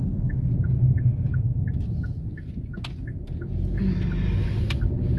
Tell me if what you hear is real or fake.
real